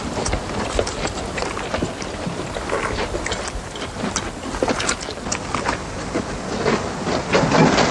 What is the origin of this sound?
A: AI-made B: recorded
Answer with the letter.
B